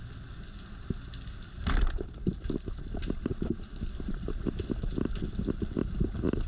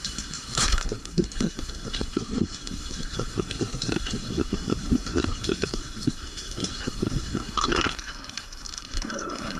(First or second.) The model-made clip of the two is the second